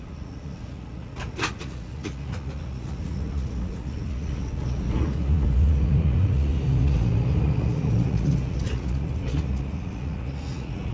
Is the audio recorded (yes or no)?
no